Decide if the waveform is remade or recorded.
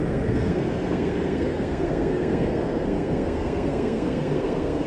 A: remade